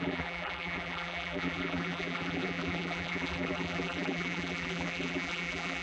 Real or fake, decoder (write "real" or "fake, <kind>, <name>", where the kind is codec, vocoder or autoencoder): fake, vocoder, BigVGAN v2